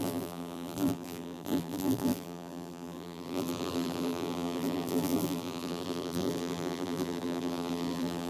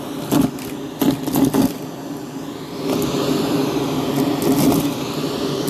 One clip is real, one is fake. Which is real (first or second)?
second